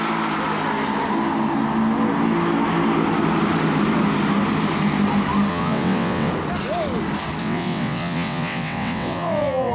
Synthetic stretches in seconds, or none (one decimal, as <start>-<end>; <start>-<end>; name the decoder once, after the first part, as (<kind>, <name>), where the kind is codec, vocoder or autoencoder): 5.5-6.3 (vocoder, WaveNeXt); 7.4-9.7